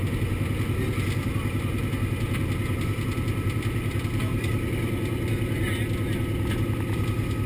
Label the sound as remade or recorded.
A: recorded